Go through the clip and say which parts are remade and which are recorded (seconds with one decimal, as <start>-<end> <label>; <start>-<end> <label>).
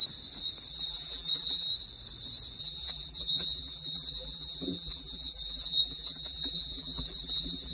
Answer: 0.0-0.7 recorded; 0.7-1.7 remade; 1.7-2.6 recorded; 2.6-7.7 remade